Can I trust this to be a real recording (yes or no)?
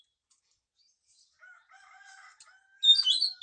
yes